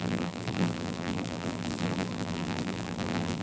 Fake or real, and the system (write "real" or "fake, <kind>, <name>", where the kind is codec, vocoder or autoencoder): fake, vocoder, BigVGAN v2